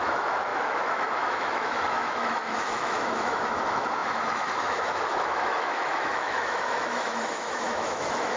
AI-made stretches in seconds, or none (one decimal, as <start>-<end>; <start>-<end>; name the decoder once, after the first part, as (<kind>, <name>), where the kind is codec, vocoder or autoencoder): 0.0-8.4 (autoencoder, DAC-VAE)